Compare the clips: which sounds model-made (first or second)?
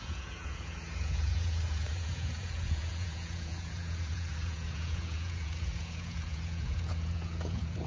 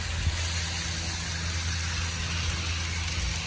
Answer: first